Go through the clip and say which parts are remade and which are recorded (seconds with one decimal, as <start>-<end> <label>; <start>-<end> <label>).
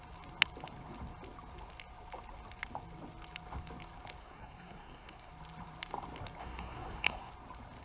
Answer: 0.0-4.2 recorded; 4.2-5.3 remade; 5.3-6.4 recorded; 6.4-7.3 remade; 7.3-7.8 recorded